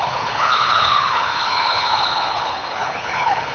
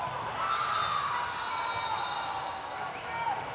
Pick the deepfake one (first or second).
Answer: first